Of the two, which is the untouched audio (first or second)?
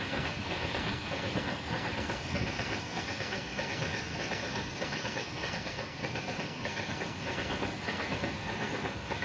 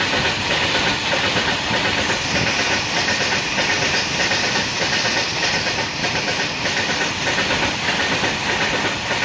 second